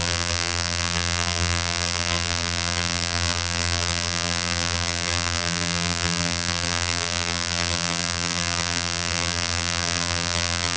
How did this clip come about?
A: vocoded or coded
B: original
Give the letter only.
A